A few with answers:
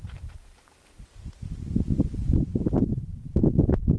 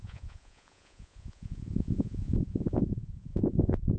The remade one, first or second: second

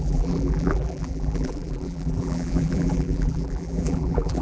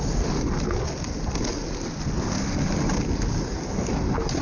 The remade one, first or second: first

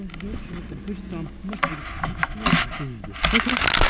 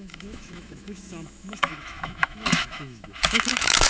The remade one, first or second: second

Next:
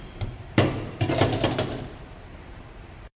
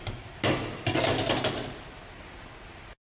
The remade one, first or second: first